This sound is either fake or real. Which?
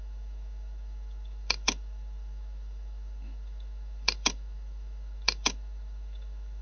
fake